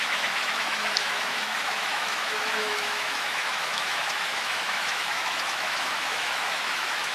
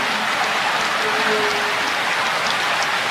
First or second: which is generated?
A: first